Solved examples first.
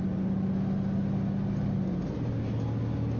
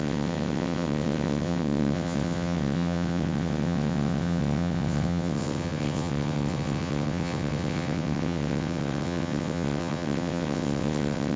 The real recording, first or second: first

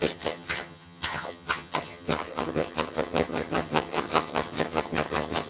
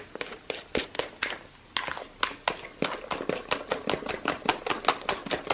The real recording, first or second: second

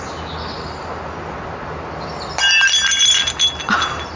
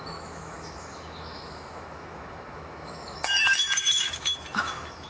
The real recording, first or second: first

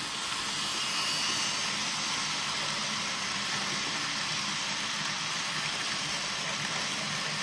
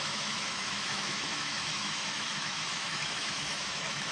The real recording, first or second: first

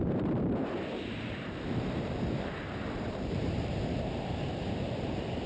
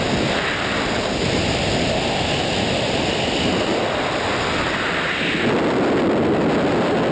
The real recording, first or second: second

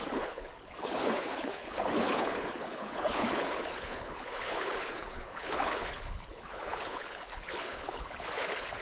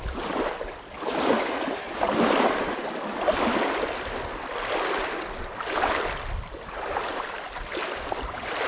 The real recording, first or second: second